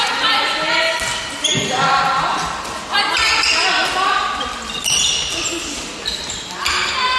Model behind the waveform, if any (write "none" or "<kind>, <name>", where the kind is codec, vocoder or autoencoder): none